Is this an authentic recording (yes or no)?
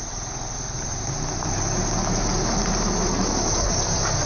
yes